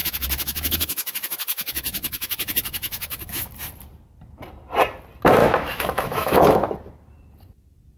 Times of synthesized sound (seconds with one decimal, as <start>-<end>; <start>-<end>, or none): 0.0-3.5; 5.4-6.7